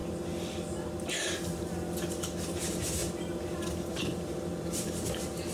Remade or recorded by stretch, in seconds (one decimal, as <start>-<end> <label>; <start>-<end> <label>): 0.0-2.5 recorded; 2.5-3.0 remade; 3.0-3.9 recorded; 3.9-5.5 remade